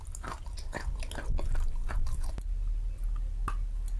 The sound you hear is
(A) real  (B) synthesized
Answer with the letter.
A